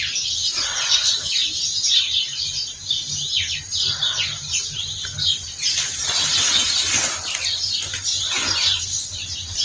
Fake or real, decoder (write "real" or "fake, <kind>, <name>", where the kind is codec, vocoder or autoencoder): real